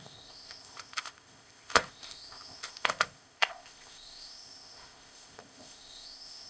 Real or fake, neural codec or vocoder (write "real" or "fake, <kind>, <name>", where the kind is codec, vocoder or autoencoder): fake, codec, ZipCodec